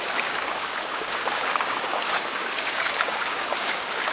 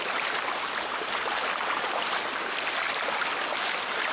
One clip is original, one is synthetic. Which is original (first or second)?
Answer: second